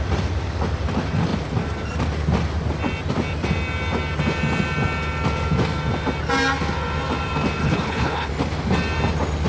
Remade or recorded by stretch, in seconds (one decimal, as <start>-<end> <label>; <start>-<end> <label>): 0.0-7.6 recorded; 7.6-8.3 remade; 8.3-9.5 recorded